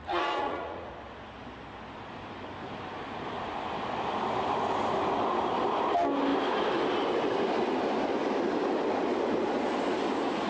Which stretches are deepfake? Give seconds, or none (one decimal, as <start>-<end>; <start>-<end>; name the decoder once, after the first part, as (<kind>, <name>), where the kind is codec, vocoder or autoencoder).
0.0-0.9 (vocoder, Vocos)